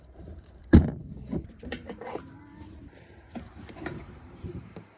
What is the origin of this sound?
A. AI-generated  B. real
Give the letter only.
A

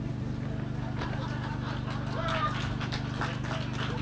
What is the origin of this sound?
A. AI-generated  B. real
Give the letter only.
B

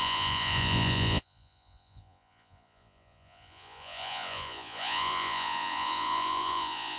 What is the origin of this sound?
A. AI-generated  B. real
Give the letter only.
A